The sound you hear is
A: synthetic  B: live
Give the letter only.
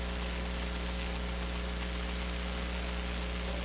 B